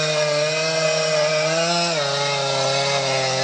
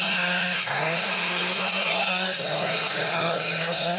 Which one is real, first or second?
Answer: first